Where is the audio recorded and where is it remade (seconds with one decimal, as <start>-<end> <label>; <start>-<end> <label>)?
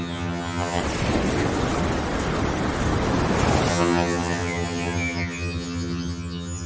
0.0-0.8 remade; 0.8-3.7 recorded; 3.7-6.7 remade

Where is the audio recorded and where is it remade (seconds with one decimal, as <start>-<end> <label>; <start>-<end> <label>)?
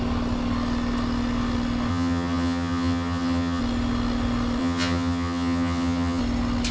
0.0-1.9 recorded; 1.9-3.6 remade; 3.6-4.6 recorded; 4.6-6.2 remade; 6.2-6.7 recorded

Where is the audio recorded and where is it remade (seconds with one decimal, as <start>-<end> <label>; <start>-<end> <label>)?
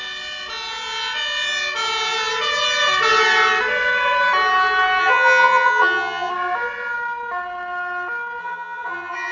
0.0-5.0 recorded; 5.0-6.3 remade; 6.3-8.4 recorded; 8.4-9.3 remade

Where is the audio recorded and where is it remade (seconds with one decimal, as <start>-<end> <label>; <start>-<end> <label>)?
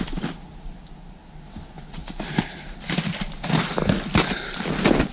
0.0-5.1 recorded